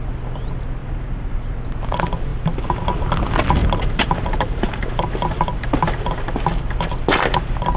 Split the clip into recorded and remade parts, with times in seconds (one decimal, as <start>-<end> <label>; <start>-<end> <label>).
0.0-0.8 recorded; 0.8-1.6 remade; 1.6-3.6 recorded; 3.6-5.1 remade; 5.1-7.8 recorded